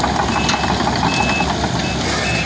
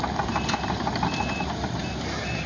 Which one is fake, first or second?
second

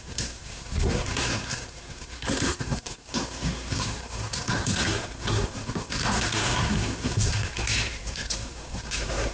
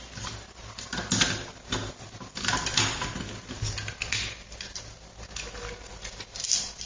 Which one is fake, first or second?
first